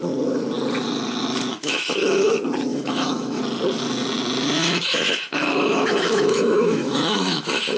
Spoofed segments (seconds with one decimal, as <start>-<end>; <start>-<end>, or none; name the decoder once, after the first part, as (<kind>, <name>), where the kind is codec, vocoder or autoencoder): 1.5-2.3 (autoencoder, DAC-VAE); 2.7-3.4; 4.6-7.8